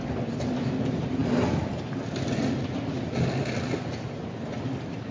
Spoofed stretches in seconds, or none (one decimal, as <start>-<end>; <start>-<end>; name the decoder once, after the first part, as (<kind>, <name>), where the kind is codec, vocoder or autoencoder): none